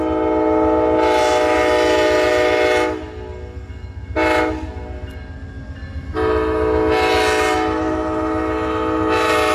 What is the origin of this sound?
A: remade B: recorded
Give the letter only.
B